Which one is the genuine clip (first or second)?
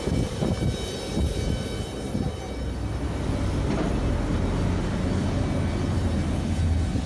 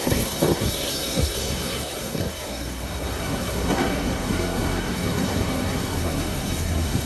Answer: first